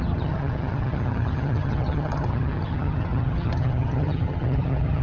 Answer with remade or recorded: remade